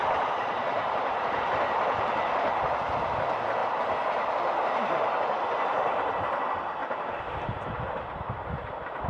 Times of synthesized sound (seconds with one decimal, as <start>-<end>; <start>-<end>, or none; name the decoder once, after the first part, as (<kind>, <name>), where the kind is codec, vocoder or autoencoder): 0.0-1.8 (vocoder, BigVGAN v2); 3.6-6.1; 6.8-7.8